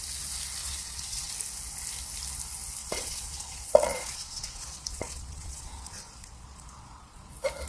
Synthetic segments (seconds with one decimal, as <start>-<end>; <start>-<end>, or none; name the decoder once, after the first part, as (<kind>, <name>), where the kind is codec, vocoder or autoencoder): 0.6-1.3 (vocoder, Vocos); 2.8-7.3